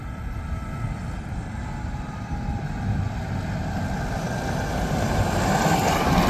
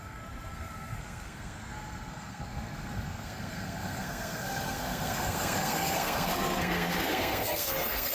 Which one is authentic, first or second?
first